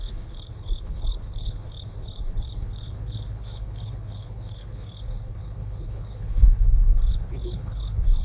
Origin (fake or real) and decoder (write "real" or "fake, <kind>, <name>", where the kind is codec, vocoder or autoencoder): fake, codec, HILCodec